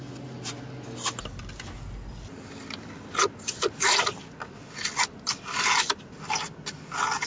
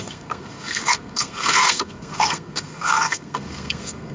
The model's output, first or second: second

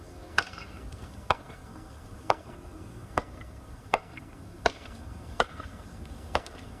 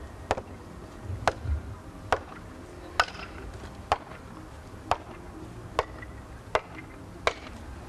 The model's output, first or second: first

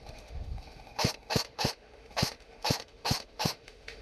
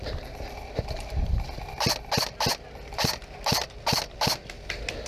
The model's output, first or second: first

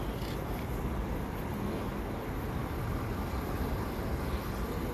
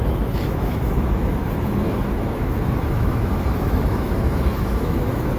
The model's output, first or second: second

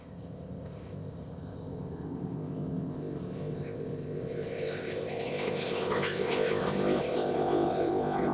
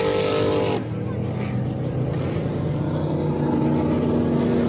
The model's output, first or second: first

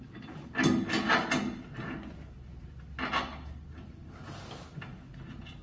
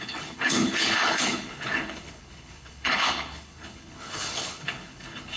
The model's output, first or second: second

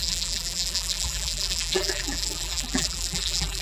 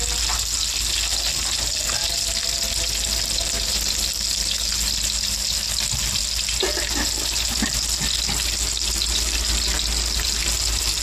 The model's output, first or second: first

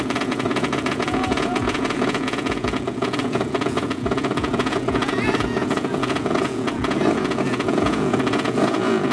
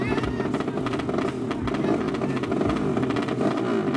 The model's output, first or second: first